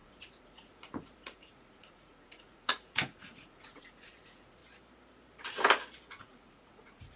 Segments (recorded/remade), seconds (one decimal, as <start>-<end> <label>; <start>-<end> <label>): 0.0-4.6 remade; 4.6-6.1 recorded; 6.1-7.2 remade

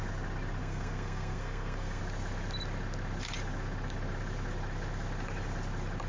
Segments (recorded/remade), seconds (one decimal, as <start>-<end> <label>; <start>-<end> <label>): 0.0-0.6 recorded; 0.6-2.0 remade; 2.0-6.1 recorded

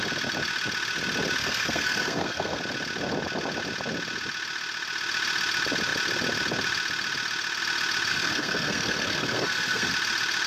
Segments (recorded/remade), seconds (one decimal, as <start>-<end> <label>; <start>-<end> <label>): 0.0-1.4 recorded; 1.4-2.6 remade; 2.6-8.1 recorded; 8.1-9.9 remade; 9.9-10.5 recorded

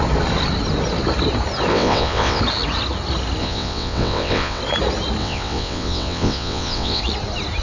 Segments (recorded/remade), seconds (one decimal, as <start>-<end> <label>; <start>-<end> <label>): 0.0-1.7 recorded; 1.7-2.4 remade; 2.4-3.4 recorded; 3.4-4.6 remade; 4.6-5.2 recorded; 5.2-7.0 remade; 7.0-7.6 recorded

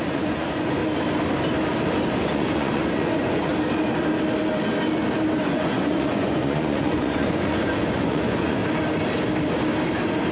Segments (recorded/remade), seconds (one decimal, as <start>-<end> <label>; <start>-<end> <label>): 0.0-0.8 remade; 0.8-2.1 recorded; 2.1-3.5 remade; 3.5-5.4 recorded; 5.4-8.6 remade; 8.6-10.3 recorded